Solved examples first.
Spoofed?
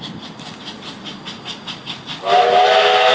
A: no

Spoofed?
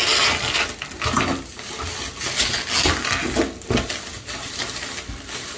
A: no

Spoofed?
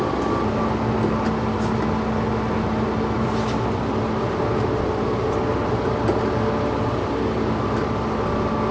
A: no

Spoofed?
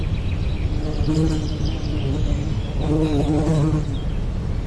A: no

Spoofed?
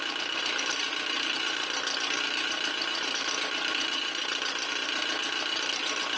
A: no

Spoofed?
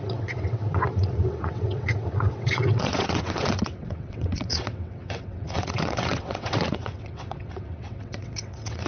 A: yes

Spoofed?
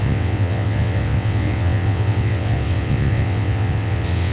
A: yes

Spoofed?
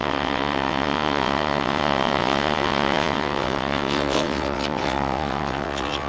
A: yes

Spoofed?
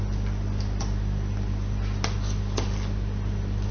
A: no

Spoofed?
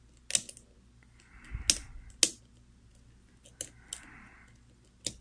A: no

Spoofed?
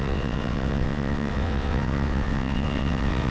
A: yes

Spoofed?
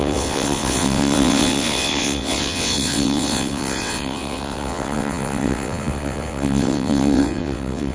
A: yes